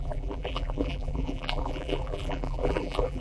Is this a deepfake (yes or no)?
yes